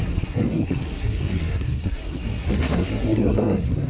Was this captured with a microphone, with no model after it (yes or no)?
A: no